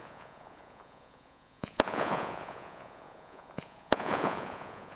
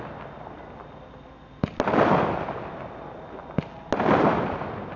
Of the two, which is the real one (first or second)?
second